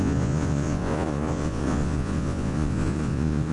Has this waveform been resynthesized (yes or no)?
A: yes